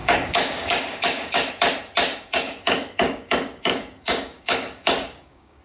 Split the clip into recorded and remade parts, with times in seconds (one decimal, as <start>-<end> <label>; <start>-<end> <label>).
0.0-1.5 remade; 1.5-2.1 recorded; 2.1-5.6 remade